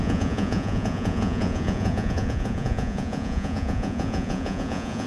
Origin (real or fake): fake